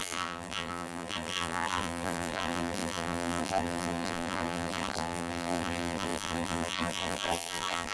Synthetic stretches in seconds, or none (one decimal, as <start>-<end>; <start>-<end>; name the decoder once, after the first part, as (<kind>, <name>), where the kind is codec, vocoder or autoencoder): 0.0-7.9 (vocoder, BigVGAN v2)